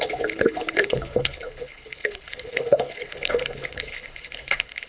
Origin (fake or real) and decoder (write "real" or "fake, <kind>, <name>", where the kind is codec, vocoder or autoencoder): fake, codec, HILCodec